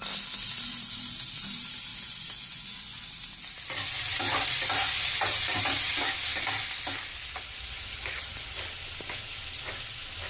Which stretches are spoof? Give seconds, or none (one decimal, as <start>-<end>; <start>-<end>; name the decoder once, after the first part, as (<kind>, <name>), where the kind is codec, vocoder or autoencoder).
1.9-3.0 (vocoder, Vocos)